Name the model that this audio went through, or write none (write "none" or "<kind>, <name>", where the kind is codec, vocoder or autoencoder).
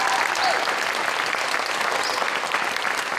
none